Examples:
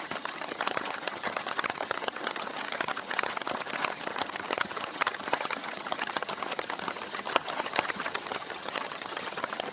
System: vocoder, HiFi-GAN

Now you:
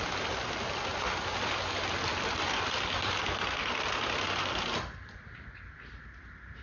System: none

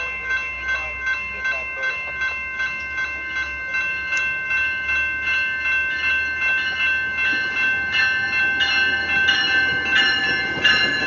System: none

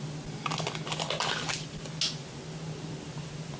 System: none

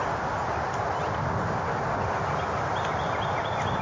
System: none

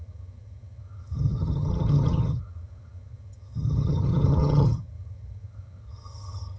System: vocoder, HiFi-GAN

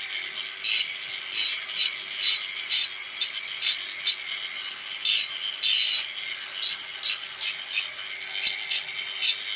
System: none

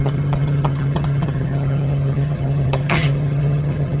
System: vocoder, HiFi-GAN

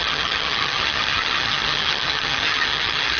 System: vocoder, HiFi-GAN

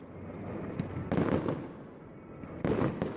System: none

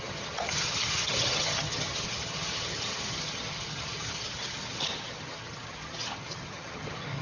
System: vocoder, HiFi-GAN